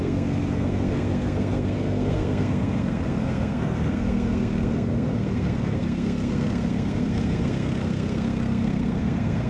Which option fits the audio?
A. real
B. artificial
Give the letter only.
B